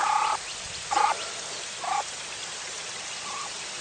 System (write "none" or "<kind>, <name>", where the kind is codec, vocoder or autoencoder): none